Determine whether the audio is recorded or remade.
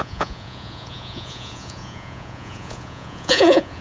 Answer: remade